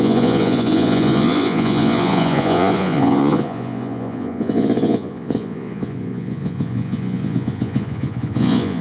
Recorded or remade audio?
remade